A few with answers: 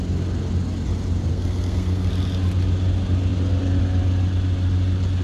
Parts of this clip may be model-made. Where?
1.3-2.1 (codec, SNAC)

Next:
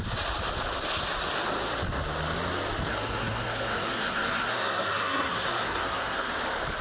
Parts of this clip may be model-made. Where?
2.9-6.3 (codec, SNAC)